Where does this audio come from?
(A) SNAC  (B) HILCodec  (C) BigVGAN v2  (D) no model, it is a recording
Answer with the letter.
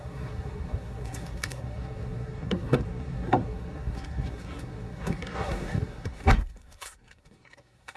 A